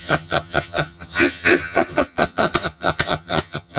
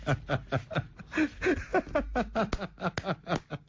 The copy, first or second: first